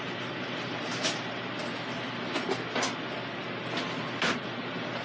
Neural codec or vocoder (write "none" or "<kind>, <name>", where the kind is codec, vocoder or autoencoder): none